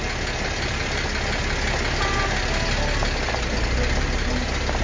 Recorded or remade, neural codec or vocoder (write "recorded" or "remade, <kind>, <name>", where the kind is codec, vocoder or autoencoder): recorded